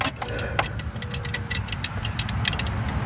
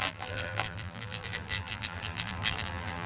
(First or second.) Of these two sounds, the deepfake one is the second